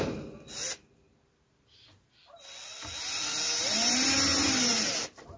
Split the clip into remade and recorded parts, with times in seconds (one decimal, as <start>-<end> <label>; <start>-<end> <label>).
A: 0.0-5.4 recorded